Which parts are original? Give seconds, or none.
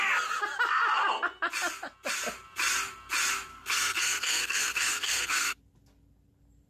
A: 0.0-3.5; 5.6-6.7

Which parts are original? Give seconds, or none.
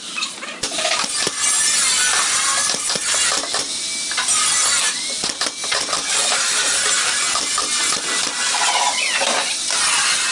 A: 0.0-10.3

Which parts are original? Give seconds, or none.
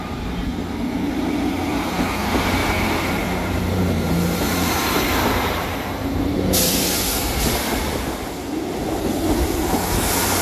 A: 0.0-2.6; 6.9-10.4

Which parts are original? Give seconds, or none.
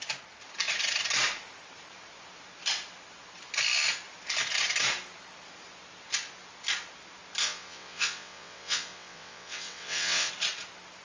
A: 0.0-7.4; 10.3-11.0